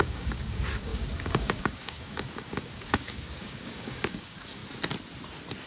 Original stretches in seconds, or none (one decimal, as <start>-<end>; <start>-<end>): 4.6-5.7